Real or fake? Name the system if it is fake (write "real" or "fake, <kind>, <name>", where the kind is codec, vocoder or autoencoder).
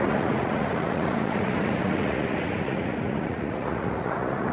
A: fake, vocoder, Vocos